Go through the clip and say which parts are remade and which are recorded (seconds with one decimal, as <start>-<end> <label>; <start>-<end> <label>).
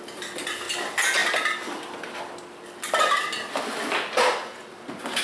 0.0-5.2 recorded